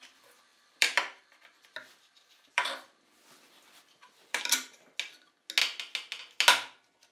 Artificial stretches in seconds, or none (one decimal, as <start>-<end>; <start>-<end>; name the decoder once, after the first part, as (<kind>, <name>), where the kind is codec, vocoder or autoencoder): 0.5-4.4 (vocoder, BigVGAN v2)